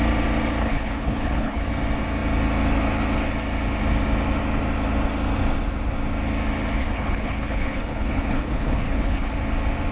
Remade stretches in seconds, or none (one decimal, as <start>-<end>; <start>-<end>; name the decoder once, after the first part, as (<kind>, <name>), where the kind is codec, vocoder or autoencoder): 0.6-1.6 (codec, HILCodec); 6.8-9.3